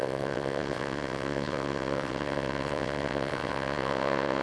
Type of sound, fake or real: fake